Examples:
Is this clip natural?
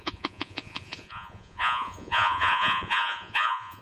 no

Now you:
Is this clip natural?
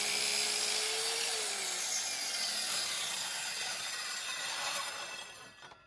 yes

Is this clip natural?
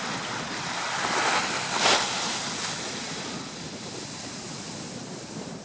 yes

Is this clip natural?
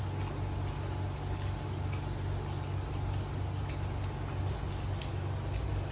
yes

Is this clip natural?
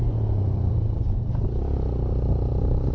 yes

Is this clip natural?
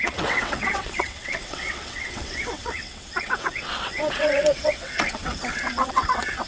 no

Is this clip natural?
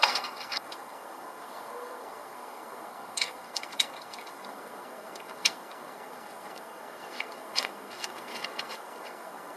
no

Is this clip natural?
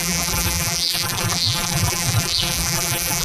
no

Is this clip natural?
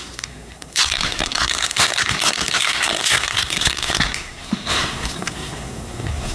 no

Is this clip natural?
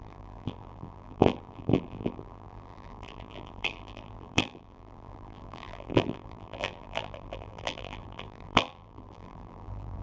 no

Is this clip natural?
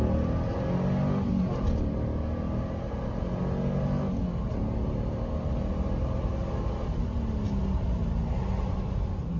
yes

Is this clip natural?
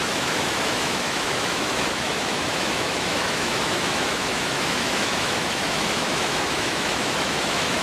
no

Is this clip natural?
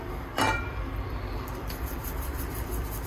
no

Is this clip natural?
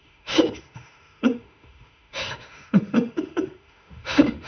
no